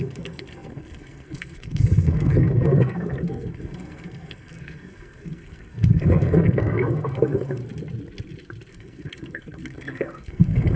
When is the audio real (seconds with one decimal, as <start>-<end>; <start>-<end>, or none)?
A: 7.6-8.7